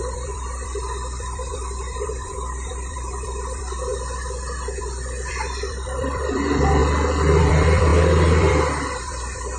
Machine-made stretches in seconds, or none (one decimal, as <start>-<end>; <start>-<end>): 0.0-3.9; 4.8-6.8; 7.4-9.6